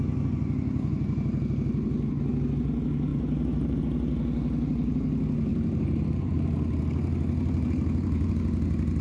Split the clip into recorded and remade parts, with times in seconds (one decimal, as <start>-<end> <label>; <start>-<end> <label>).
0.0-3.1 recorded; 3.1-3.8 remade; 3.8-5.5 recorded; 5.5-8.3 remade; 8.3-9.0 recorded